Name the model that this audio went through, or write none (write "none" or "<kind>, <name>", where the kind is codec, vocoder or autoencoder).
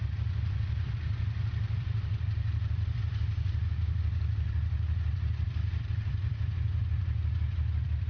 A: vocoder, BigVGAN v2